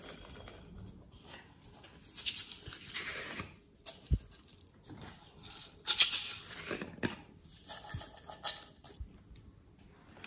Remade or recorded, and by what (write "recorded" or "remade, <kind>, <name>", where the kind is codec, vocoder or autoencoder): recorded